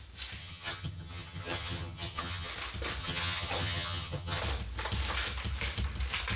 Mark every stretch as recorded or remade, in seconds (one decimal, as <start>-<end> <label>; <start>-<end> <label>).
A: 0.0-0.4 recorded; 0.4-2.5 remade; 2.5-3.0 recorded; 3.0-4.4 remade; 4.4-6.4 recorded